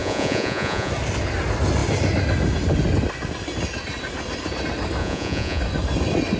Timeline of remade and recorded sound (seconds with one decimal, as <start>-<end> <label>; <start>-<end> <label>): 0.0-0.9 remade; 0.9-5.0 recorded; 5.0-5.6 remade; 5.6-6.4 recorded